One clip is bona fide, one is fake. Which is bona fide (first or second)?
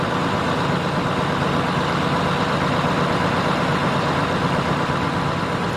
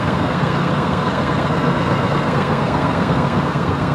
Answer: first